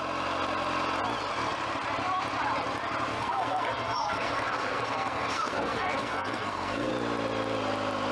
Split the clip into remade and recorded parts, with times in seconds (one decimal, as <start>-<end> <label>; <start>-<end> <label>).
0.0-3.1 recorded; 3.1-6.9 remade; 6.9-8.1 recorded